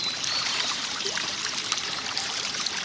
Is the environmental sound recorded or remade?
remade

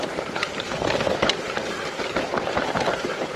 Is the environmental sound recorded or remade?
remade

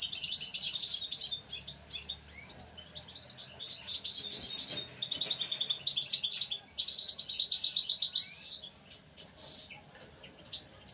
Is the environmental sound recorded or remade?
recorded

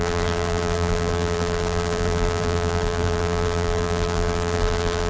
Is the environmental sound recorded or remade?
remade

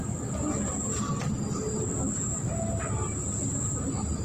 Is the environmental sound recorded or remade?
recorded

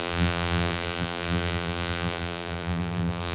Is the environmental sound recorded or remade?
remade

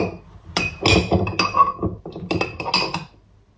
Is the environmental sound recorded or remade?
recorded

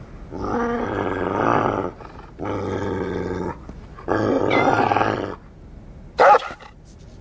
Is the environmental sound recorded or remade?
recorded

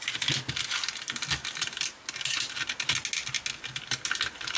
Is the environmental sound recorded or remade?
recorded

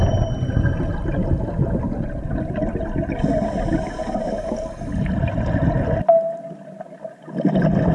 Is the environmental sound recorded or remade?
recorded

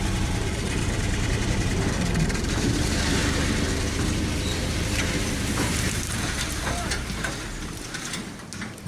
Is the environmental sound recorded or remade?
remade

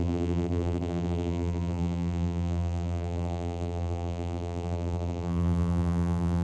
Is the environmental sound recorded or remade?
remade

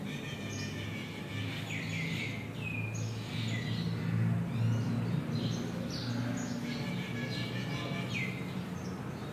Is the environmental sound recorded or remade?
recorded